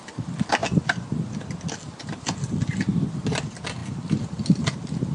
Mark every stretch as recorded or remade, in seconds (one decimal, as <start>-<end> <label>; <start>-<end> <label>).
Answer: 0.0-5.1 recorded

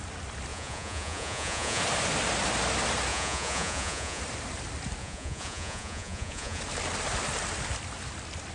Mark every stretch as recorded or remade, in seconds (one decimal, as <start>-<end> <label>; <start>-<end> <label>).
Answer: 0.0-0.5 recorded; 0.5-1.8 remade; 1.8-3.1 recorded; 3.1-4.2 remade; 4.2-5.0 recorded; 5.0-6.6 remade; 6.6-8.5 recorded

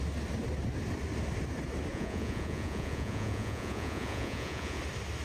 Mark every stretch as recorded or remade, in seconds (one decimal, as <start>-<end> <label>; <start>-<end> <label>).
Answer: 0.0-1.9 recorded; 1.9-4.8 remade; 4.8-5.2 recorded

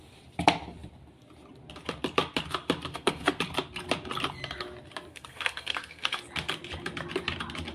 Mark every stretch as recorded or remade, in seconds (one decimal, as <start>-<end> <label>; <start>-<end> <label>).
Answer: 0.0-2.9 recorded; 2.9-3.4 remade; 3.4-5.1 recorded; 5.1-6.2 remade; 6.2-7.7 recorded

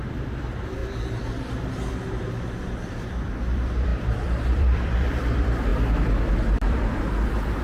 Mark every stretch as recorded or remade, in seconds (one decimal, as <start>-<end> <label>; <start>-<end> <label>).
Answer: 0.0-0.8 remade; 0.8-1.7 recorded; 1.7-5.7 remade; 5.7-6.3 recorded; 6.3-7.6 remade

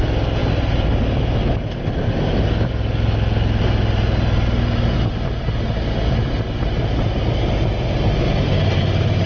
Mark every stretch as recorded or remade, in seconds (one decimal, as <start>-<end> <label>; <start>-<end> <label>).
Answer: 0.0-0.4 recorded; 0.4-1.0 remade; 1.0-9.3 recorded

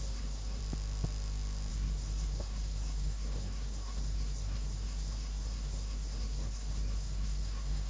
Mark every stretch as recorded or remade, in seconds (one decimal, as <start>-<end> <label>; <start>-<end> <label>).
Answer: 0.0-0.6 remade; 0.6-1.7 recorded; 1.7-7.9 remade